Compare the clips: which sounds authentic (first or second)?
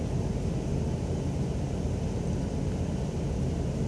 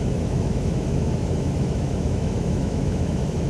first